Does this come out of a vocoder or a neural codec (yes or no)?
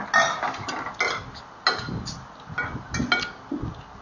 no